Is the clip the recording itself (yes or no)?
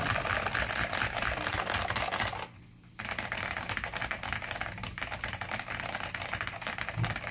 yes